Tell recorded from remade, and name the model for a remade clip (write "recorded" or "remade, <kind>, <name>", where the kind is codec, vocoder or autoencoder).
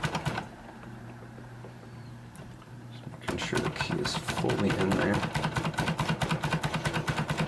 remade, vocoder, BigVGAN v2